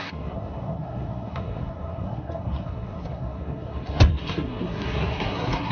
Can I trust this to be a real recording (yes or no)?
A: no